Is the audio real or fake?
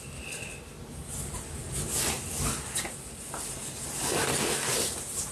real